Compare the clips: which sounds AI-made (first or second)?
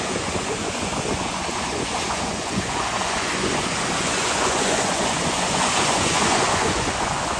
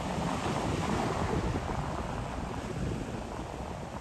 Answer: first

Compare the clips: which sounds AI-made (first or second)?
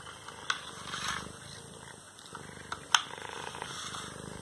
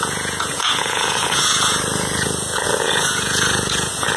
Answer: second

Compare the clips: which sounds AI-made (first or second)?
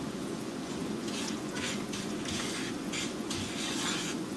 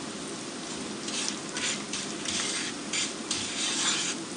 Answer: first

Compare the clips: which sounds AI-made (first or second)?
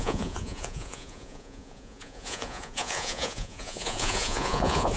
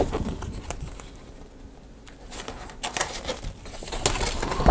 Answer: first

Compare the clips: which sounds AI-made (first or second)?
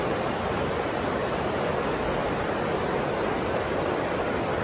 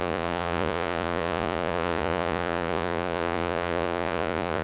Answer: second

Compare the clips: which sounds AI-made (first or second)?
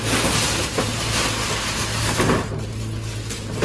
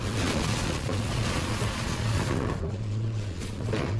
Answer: second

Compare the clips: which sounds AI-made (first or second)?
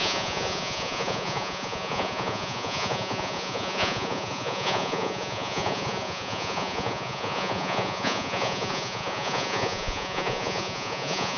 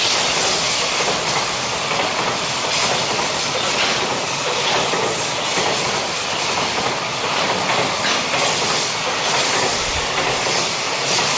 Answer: first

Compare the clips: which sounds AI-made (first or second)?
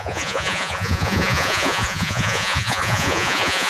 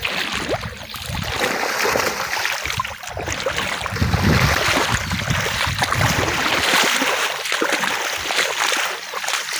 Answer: first